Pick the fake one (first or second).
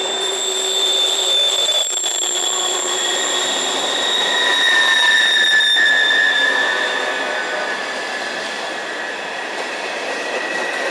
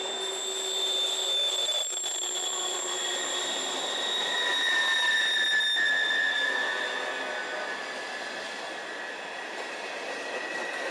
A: first